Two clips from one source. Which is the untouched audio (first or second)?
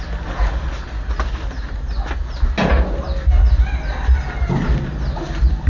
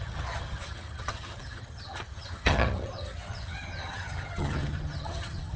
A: first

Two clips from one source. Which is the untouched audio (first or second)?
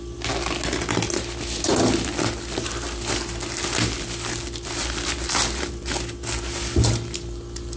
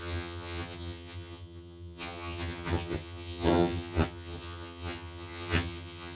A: first